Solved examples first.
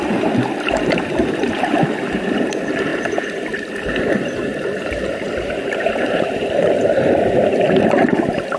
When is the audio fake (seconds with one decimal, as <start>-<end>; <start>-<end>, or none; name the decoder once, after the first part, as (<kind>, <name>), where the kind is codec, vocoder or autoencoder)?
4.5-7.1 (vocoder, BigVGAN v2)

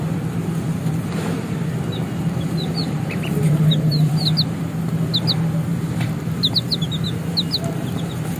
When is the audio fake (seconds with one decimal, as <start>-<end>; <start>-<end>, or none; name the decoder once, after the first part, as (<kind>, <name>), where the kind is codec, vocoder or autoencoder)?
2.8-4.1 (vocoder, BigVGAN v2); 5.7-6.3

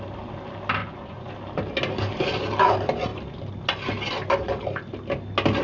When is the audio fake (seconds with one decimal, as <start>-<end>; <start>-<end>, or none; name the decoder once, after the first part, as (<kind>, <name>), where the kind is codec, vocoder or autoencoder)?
0.8-1.3 (vocoder, Vocos)

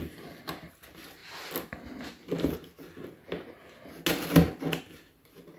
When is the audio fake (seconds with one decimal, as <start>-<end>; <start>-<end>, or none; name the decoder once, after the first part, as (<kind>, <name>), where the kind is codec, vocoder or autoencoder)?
0.0-1.2 (vocoder, BigVGAN v2); 4.6-5.6

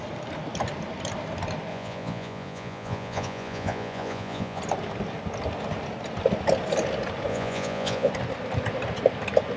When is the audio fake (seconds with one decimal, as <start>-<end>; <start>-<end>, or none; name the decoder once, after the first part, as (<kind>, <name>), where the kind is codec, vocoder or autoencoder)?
1.7-4.6 (vocoder, Vocos); 7.3-8.1

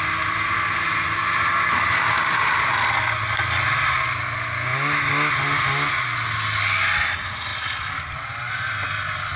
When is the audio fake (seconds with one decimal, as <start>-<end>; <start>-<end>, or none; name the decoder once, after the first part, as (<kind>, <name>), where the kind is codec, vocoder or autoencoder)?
4.7-5.3 (autoencoder, DAC-VAE)

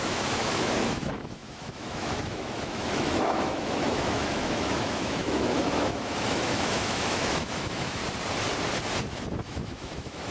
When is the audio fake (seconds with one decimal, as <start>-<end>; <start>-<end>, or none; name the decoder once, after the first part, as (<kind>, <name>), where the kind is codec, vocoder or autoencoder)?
0.0-8.0 (autoencoder, DAC-VAE); 9.4-10.3